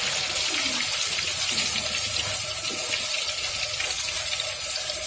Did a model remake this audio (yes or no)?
no